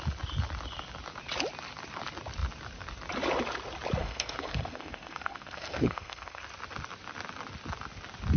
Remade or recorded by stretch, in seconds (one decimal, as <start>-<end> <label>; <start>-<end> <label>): 0.0-4.0 recorded; 4.0-6.4 remade; 6.4-8.4 recorded